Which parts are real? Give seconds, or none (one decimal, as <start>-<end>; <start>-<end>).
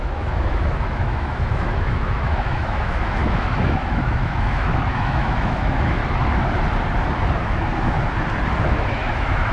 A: 6.0-8.6